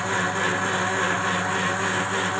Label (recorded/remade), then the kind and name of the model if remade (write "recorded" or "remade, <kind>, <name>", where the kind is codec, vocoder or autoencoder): recorded